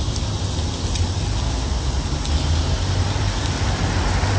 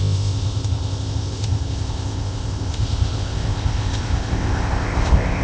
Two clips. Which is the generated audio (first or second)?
second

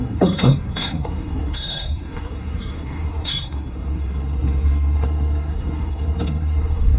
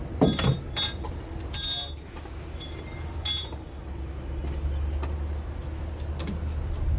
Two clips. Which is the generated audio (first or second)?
first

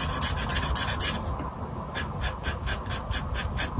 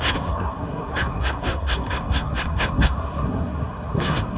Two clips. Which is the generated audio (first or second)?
second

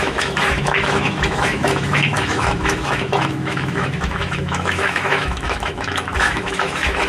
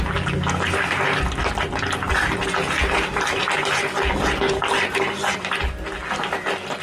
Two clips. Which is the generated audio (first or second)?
first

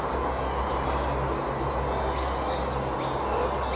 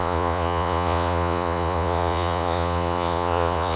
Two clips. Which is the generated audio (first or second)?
second